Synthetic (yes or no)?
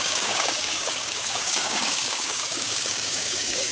yes